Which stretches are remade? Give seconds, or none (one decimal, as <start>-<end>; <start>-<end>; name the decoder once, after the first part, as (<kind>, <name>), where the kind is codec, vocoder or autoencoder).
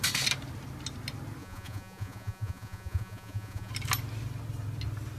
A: 1.4-3.7 (vocoder, Vocos)